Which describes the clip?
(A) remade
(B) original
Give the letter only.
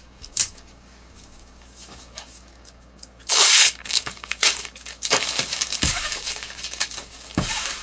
A